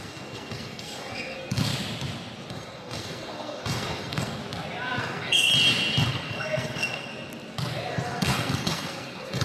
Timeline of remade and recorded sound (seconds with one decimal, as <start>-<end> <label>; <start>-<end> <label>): 0.0-1.7 remade; 1.7-2.5 recorded; 2.5-4.4 remade; 4.4-5.0 recorded; 5.0-5.5 remade; 5.5-6.1 recorded; 6.1-7.1 remade; 7.1-7.9 recorded; 7.9-9.4 remade